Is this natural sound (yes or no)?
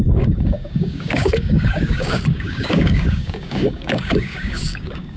no